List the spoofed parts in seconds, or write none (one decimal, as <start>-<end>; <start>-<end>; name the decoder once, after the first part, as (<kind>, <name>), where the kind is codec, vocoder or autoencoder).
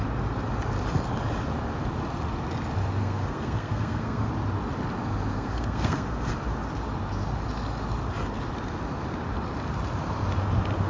3.0-4.3 (codec, SNAC); 5.3-6.3